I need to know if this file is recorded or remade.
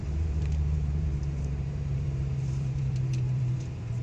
remade